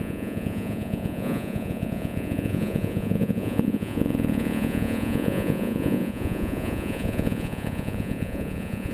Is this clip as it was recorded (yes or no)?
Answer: no